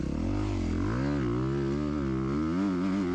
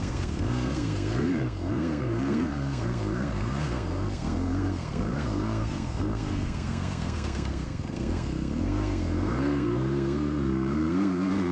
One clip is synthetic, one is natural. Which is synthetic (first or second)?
second